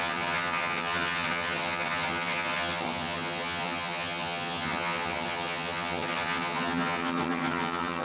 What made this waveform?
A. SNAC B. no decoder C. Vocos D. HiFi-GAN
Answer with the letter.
D